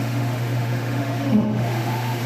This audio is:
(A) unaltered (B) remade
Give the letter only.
B